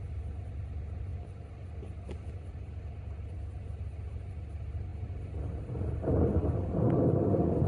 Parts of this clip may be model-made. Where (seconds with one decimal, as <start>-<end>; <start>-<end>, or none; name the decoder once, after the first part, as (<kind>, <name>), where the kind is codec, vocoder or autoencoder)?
none